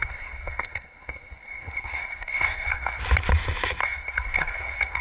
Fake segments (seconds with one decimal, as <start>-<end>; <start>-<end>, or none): 0.0-3.0; 3.8-5.0